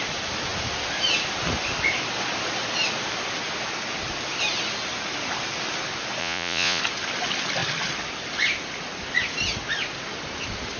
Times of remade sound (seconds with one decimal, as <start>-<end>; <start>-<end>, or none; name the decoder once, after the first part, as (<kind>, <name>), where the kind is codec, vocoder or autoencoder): 6.2-6.8 (vocoder, Vocos)